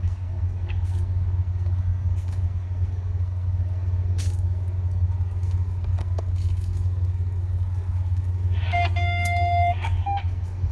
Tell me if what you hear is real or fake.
fake